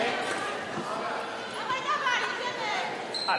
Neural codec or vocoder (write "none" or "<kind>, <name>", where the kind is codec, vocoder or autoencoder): none